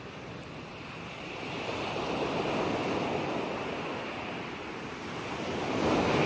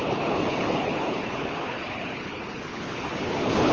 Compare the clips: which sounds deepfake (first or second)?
second